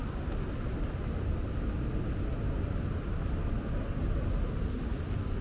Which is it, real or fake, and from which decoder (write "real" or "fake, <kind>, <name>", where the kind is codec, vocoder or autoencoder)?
real